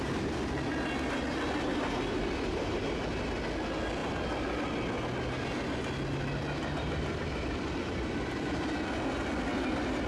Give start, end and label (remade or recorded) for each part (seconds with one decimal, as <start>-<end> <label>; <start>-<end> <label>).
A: 0.0-6.6 recorded; 6.6-8.1 remade; 8.1-10.1 recorded